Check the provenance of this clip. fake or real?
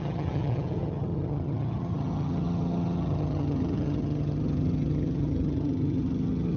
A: fake